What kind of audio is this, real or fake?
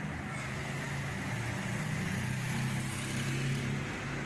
real